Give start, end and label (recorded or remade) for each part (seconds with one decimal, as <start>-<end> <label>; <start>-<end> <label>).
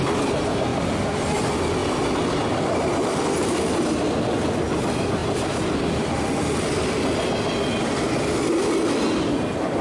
0.0-9.8 recorded